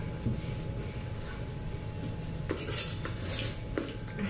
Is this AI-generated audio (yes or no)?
no